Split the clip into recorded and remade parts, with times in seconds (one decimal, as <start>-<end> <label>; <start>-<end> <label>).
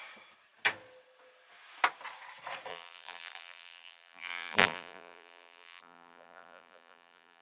0.0-2.7 recorded; 2.7-7.4 remade